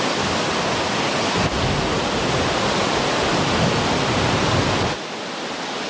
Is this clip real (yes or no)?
yes